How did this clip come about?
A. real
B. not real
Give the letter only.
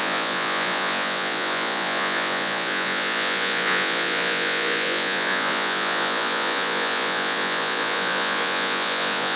B